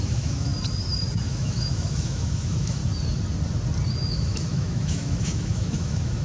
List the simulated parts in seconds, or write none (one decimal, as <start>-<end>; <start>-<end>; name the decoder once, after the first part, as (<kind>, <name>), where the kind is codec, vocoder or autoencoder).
0.0-0.5 (autoencoder, DAC-VAE); 1.2-2.8; 3.9-6.2